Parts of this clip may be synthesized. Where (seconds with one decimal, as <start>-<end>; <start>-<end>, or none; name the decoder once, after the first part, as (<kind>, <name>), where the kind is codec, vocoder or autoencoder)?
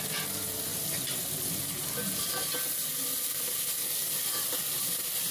0.7-1.6 (vocoder, BigVGAN v2); 3.8-4.6